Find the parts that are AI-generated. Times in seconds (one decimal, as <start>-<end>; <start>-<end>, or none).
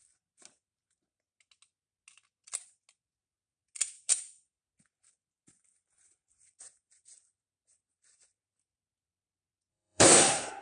9.7-10.6